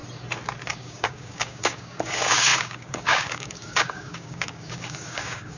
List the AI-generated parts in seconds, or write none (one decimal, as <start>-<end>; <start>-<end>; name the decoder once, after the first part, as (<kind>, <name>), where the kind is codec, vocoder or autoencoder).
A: 0.7-5.6 (codec, DAC)